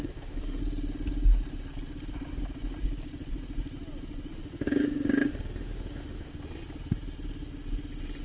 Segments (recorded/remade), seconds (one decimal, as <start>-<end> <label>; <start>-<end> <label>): 0.0-0.6 remade; 0.6-4.3 recorded; 4.3-6.3 remade; 6.3-8.2 recorded